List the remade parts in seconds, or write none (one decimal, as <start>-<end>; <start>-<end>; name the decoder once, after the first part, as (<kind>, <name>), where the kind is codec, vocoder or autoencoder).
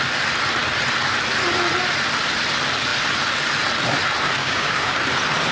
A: 4.4-5.0 (codec, DAC)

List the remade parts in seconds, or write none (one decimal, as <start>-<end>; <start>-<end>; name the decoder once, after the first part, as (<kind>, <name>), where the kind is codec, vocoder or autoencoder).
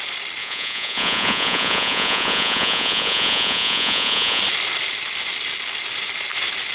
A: 0.4-4.4 (vocoder, Vocos)